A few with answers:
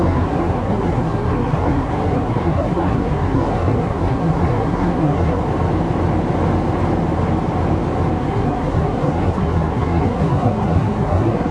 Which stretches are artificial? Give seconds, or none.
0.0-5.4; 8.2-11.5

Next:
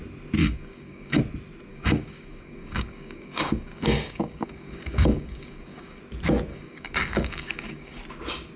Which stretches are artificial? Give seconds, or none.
0.4-1.2; 1.7-6.0; 6.5-8.0